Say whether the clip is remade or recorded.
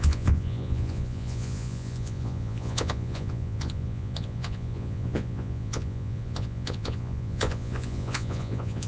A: remade